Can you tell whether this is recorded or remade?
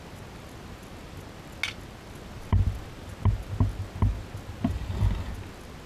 recorded